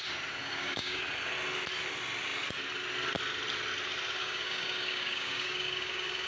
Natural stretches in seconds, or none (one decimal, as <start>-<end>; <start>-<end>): 0.0-0.4; 1.0-4.2